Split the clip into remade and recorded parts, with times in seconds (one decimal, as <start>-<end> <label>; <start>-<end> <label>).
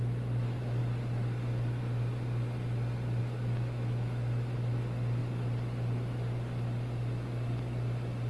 0.0-0.8 remade; 0.8-3.2 recorded; 3.2-5.2 remade; 5.2-8.3 recorded